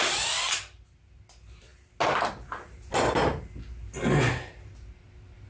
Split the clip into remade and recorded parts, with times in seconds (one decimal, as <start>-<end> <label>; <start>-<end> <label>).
0.0-5.5 recorded